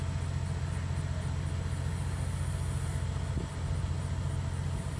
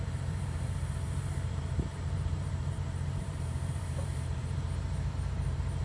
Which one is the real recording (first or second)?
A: first